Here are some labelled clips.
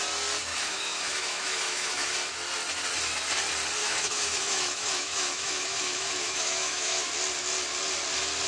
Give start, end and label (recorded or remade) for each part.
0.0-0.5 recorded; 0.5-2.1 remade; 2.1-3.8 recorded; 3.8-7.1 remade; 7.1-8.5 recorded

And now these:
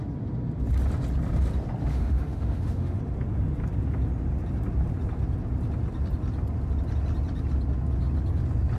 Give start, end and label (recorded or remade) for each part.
0.0-1.9 recorded; 1.9-3.0 remade; 3.0-8.8 recorded

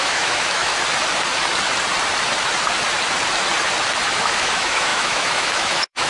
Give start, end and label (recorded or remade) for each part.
0.0-0.7 remade; 0.7-4.2 recorded; 4.2-6.1 remade

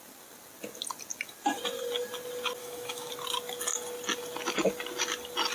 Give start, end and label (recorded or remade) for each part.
0.0-2.6 recorded; 2.6-3.1 remade; 3.1-5.5 recorded

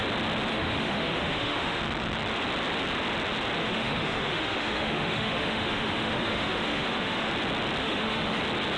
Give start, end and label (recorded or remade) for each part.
0.0-0.5 recorded; 0.5-1.8 remade; 1.8-3.6 recorded; 3.6-7.3 remade; 7.3-7.8 recorded; 7.8-8.4 remade; 8.4-8.8 recorded

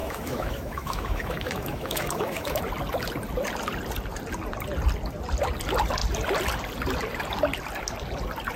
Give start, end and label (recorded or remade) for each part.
0.0-2.6 remade; 2.6-8.6 recorded

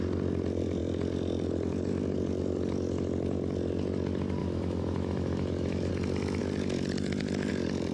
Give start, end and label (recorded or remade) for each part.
0.0-4.4 recorded; 4.4-5.9 remade; 5.9-7.9 recorded